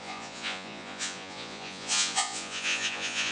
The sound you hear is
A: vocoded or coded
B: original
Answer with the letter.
A